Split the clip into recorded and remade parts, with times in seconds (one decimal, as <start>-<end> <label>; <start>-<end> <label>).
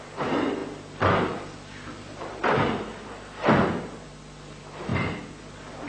0.0-5.9 recorded